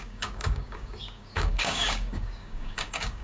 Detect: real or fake fake